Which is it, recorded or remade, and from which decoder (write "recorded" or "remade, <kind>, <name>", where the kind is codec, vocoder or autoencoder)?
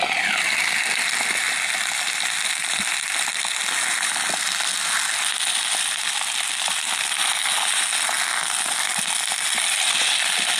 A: recorded